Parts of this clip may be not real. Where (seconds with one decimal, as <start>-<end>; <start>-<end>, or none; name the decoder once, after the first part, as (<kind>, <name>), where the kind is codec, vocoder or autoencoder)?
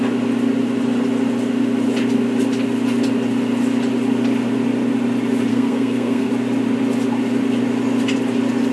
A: 5.5-6.3 (codec, SNAC)